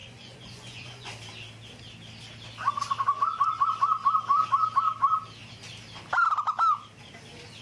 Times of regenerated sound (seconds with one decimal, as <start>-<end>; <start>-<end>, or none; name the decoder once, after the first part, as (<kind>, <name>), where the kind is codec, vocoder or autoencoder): 0.0-1.1 (vocoder, Vocos)